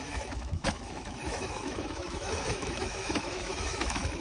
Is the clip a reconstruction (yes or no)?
yes